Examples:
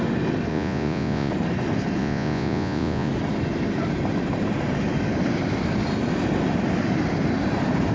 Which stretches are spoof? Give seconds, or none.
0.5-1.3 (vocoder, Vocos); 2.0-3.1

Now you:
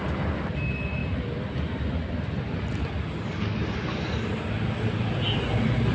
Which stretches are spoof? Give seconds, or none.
none

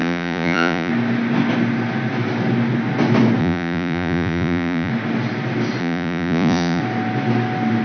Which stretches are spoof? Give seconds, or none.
0.0-0.9 (vocoder, Vocos); 3.4-4.9; 5.8-6.8

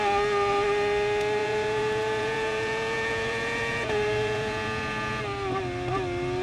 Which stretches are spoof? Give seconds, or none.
1.4-5.2 (vocoder, Vocos)

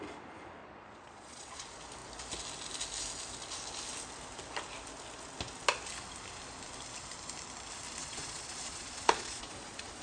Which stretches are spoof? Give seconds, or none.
0.6-1.6 (vocoder, Vocos); 8.0-10.0

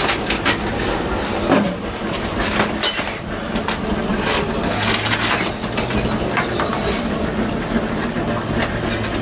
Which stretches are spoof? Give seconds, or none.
none

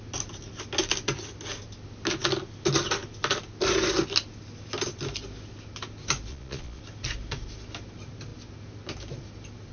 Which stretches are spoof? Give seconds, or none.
6.3-6.8 (vocoder, Vocos)

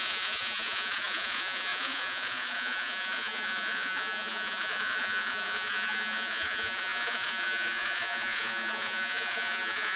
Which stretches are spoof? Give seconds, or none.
0.0-10.0 (vocoder, Vocos)